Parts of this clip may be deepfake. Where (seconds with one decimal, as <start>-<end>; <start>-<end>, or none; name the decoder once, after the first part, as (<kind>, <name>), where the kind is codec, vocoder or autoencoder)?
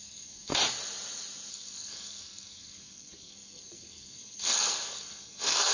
0.0-0.5 (codec, SNAC); 1.5-5.7